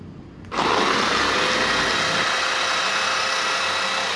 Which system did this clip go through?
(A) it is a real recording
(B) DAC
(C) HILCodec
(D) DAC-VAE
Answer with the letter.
A